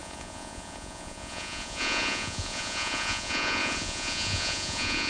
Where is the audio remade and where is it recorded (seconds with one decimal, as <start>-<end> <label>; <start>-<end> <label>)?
0.0-5.1 remade